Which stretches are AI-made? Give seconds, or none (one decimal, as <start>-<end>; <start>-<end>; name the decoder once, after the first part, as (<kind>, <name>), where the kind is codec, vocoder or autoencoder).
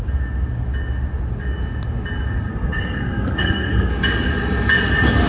2.5-3.9 (codec, SNAC)